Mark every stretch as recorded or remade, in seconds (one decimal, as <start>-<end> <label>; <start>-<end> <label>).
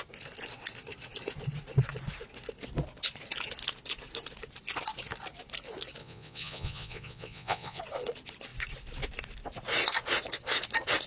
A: 0.0-6.0 recorded; 6.0-7.8 remade; 7.8-11.1 recorded